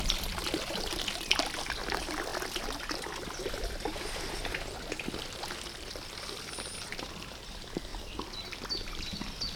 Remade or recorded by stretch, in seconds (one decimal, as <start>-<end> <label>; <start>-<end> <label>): 0.0-9.6 recorded